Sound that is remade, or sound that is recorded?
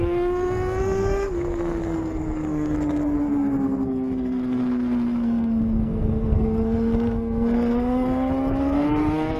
remade